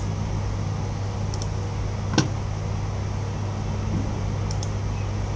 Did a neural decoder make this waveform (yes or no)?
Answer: no